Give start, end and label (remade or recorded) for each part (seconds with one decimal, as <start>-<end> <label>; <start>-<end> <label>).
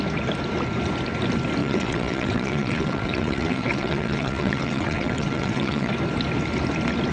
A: 0.0-1.6 recorded; 1.6-5.9 remade; 5.9-7.1 recorded